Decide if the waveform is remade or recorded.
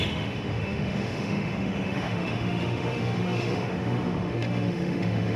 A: remade